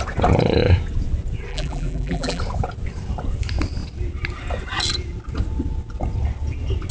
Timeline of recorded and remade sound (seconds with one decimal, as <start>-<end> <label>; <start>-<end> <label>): 0.0-1.5 recorded; 1.5-2.4 remade; 2.4-6.9 recorded